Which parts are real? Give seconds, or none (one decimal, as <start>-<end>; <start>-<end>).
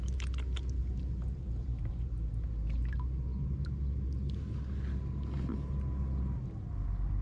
0.0-0.8; 2.5-7.2